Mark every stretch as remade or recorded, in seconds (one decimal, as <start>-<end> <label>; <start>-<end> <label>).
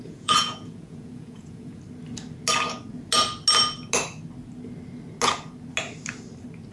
0.0-1.8 remade; 1.8-6.7 recorded